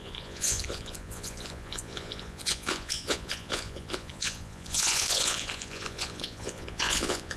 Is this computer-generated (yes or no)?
yes